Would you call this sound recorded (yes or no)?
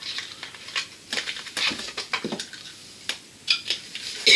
yes